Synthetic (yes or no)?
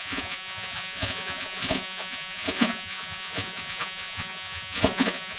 yes